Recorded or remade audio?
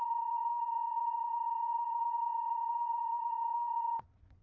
remade